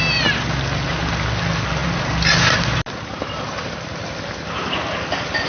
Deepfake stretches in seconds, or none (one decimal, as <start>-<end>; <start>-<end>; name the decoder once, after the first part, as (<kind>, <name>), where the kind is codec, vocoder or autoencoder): none